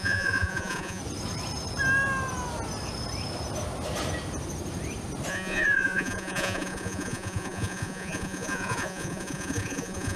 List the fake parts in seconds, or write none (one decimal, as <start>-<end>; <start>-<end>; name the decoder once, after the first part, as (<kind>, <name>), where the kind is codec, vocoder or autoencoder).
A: 0.0-1.0 (vocoder, Vocos); 5.3-10.2